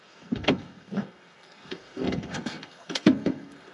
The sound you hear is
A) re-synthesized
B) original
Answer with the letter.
A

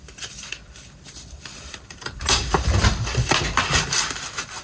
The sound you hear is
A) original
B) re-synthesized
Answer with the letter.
B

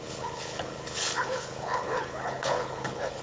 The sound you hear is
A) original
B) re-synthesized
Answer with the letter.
B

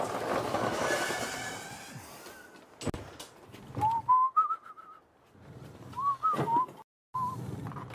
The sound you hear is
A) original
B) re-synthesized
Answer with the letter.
A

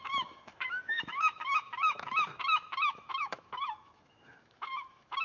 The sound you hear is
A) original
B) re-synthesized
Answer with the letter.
B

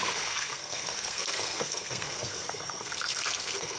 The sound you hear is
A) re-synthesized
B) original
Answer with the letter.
A